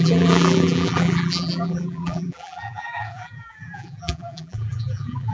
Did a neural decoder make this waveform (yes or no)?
yes